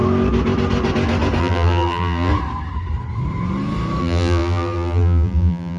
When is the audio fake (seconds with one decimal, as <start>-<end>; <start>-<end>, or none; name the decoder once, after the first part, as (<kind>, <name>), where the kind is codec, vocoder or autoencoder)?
1.4-2.3 (vocoder, BigVGAN v2); 4.0-5.8